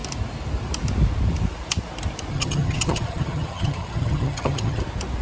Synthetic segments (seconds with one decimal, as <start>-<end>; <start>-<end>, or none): 2.3-4.8